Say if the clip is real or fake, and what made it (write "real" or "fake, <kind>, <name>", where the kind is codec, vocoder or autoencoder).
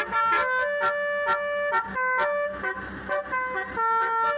real